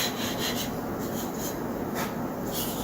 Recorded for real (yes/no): yes